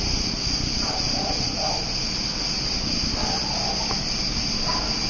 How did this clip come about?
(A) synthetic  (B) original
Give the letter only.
B